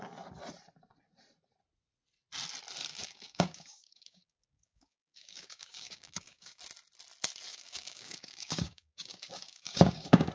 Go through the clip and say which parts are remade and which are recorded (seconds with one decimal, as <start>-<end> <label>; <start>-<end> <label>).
0.0-2.9 recorded; 2.9-6.6 remade; 6.6-7.5 recorded; 7.5-10.3 remade